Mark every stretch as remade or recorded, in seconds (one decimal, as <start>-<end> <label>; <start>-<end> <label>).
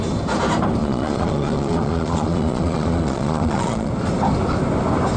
0.0-0.8 recorded; 0.8-3.9 remade; 3.9-5.2 recorded